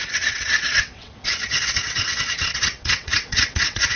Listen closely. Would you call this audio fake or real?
fake